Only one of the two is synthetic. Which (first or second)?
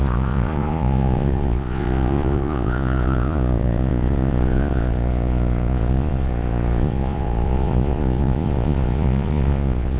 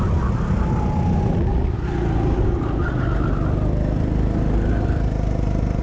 first